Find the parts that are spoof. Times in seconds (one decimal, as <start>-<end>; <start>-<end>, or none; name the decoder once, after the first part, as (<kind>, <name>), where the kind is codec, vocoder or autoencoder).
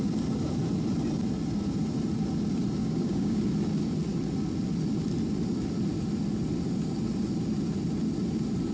2.8-3.4 (codec, DAC)